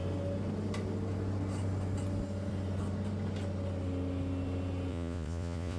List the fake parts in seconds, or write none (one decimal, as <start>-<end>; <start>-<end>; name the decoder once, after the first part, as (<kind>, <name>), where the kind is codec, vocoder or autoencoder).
4.9-5.8 (vocoder, Vocos)